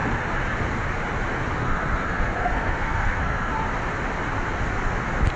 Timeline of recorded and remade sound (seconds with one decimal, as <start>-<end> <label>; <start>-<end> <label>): 0.0-1.6 recorded; 1.6-3.5 remade; 3.5-5.4 recorded